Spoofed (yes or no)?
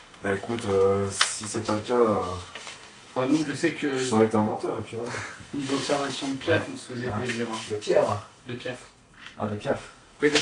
yes